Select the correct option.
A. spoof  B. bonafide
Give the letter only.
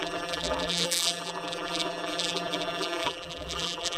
A